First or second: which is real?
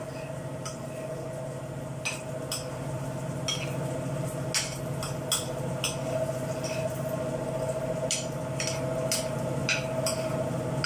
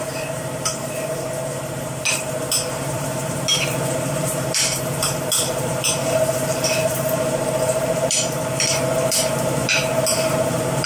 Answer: first